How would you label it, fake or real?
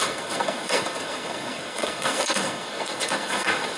fake